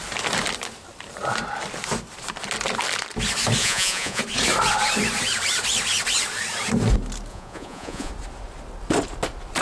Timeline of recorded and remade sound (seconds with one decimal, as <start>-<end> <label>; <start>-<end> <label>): 0.0-3.6 recorded; 3.6-4.2 remade; 4.2-7.3 recorded; 7.3-8.1 remade; 8.1-9.6 recorded